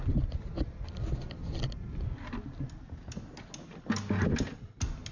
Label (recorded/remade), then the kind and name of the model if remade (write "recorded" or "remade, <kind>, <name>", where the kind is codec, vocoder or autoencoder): recorded